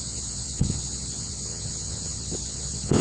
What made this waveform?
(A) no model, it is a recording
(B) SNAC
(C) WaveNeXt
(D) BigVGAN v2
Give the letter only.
C